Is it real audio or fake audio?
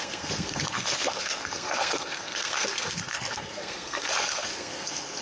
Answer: fake